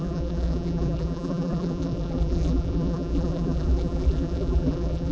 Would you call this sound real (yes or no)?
no